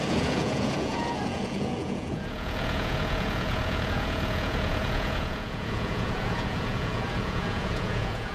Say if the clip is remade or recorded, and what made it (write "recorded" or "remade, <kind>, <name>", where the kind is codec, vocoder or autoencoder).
remade, vocoder, Vocos